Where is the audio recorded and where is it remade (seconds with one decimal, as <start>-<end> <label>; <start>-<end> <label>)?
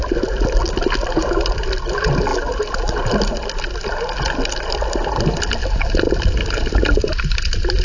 0.0-7.8 recorded